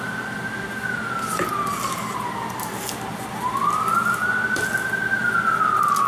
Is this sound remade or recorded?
recorded